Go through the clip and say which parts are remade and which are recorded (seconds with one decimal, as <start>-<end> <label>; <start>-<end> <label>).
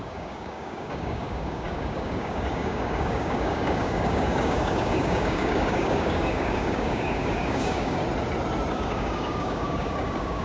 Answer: 0.0-8.0 remade; 8.0-8.7 recorded; 8.7-10.4 remade